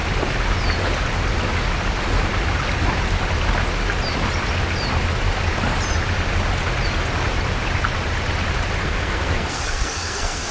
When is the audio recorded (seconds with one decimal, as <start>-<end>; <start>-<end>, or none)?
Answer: 0.0-8.8